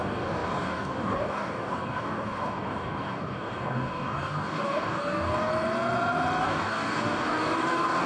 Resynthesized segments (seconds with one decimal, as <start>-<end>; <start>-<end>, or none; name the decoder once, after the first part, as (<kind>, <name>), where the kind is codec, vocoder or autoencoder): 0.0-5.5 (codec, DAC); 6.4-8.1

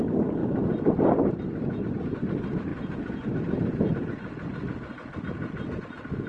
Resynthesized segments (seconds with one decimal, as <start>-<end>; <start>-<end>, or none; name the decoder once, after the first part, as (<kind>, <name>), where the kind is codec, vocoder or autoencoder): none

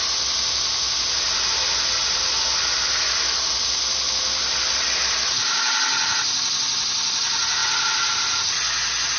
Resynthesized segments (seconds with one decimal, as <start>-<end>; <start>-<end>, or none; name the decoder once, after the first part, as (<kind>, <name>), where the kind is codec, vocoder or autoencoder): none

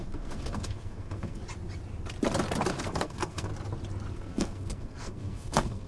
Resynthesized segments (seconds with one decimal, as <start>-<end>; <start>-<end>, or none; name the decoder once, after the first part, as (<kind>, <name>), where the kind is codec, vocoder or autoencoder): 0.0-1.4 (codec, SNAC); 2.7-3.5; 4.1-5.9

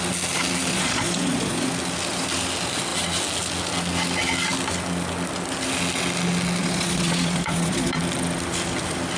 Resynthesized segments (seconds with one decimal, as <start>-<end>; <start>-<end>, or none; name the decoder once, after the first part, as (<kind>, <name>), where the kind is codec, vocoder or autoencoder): 0.7-1.7 (vocoder, Vocos); 6.6-8.0

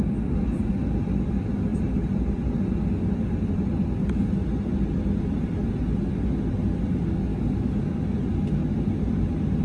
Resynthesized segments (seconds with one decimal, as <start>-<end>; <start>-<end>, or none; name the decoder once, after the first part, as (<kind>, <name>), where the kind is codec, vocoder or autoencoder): 7.3-7.8 (codec, DAC)

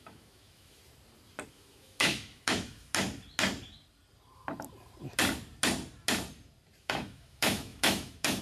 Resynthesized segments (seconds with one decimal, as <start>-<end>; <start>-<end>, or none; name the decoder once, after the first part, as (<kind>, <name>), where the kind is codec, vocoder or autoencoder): 0.0-0.8 (autoencoder, DAC-VAE); 1.5-2.9; 6.8-8.4